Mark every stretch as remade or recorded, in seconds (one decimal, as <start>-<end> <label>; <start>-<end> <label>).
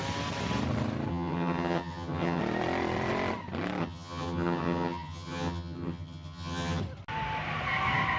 0.0-1.1 recorded; 1.1-2.4 remade; 2.4-3.8 recorded; 3.8-6.8 remade; 6.8-8.2 recorded